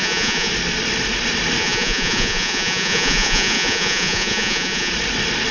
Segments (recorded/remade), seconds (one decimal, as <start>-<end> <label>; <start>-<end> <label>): 0.0-0.5 remade; 0.5-1.6 recorded; 1.6-4.9 remade; 4.9-5.5 recorded